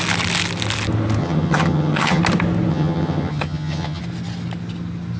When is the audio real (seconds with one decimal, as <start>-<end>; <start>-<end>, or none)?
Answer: 0.0-1.2; 2.2-2.7; 4.0-5.2

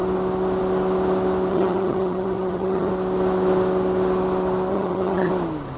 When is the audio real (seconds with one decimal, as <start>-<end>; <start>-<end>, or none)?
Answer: 0.0-1.5; 2.9-4.7; 5.3-5.8

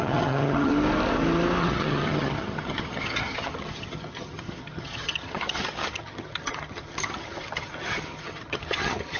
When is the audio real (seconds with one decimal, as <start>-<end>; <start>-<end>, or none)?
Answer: 0.7-1.6

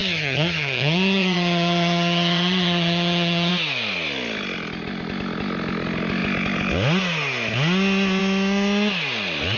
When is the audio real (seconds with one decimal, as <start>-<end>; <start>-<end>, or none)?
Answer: 3.5-9.6

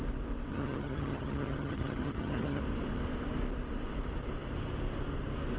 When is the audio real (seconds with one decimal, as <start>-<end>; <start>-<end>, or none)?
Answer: 0.0-0.5; 2.6-5.6

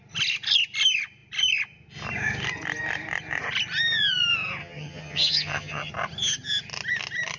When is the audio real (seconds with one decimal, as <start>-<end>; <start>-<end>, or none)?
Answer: 0.0-4.6; 5.9-7.4

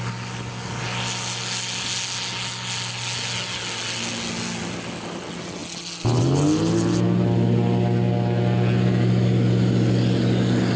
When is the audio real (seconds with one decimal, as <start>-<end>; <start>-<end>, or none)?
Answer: 0.0-10.8